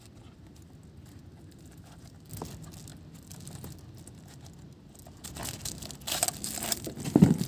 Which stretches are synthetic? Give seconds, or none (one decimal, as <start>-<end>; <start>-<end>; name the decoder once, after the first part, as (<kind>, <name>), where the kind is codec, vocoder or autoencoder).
none